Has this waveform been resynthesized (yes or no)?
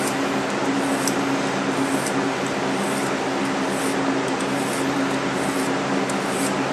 no